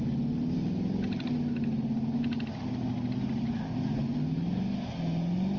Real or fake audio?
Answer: real